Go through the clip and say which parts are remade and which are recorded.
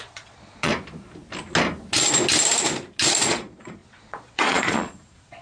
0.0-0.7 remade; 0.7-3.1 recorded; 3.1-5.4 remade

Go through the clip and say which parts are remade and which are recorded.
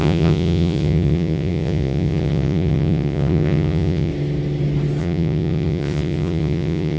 0.0-4.1 remade; 4.1-5.0 recorded; 5.0-7.0 remade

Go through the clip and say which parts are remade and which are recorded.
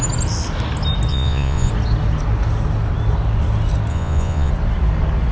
0.0-1.1 recorded; 1.1-1.7 remade; 1.7-3.9 recorded; 3.9-4.5 remade; 4.5-5.3 recorded